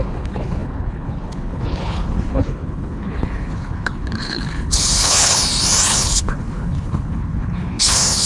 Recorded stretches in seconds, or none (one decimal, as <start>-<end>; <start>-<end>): 5.4-5.9